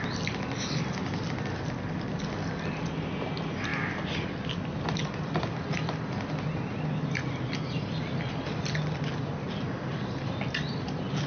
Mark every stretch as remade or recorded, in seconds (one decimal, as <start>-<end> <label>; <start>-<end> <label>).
0.0-11.3 recorded